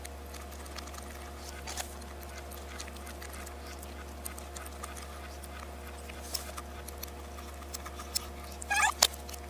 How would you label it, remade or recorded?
recorded